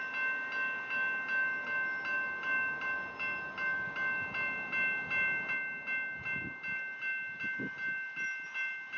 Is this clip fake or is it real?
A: real